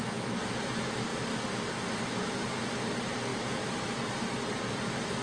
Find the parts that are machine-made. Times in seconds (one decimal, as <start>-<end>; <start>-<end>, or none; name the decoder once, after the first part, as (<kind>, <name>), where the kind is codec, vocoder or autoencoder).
3.3-4.2 (vocoder, BigVGAN v2)